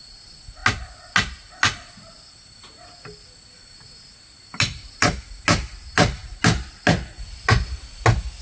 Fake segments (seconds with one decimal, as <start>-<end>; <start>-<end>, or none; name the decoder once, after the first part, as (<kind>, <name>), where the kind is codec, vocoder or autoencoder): none